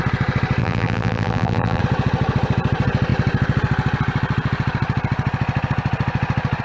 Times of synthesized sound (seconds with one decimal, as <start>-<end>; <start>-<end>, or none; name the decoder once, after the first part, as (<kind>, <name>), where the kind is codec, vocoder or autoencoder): 0.6-1.8 (vocoder, BigVGAN v2)